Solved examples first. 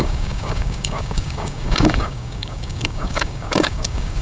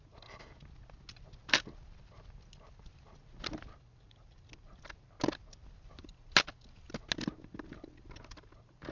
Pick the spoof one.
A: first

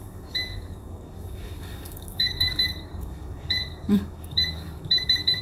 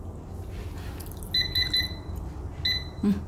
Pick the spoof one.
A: first